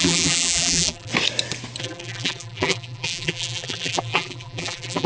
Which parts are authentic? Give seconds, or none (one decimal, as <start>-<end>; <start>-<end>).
1.1-1.8